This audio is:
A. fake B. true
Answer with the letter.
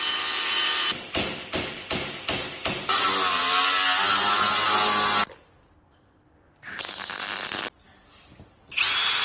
B